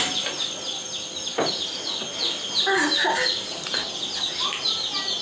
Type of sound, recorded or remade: recorded